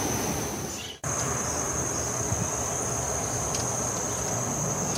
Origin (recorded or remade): recorded